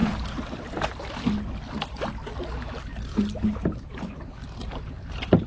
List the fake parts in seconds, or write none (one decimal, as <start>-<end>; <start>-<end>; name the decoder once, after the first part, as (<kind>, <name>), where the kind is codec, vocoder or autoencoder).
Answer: 0.0-1.1 (vocoder, BigVGAN v2); 2.9-3.8; 4.6-5.5